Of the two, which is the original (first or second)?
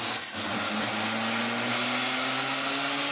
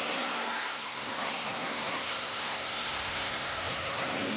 first